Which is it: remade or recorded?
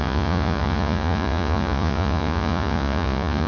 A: remade